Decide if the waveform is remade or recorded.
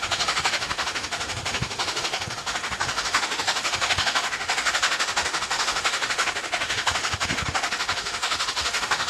remade